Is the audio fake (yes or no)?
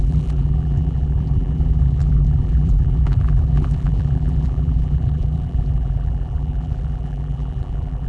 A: yes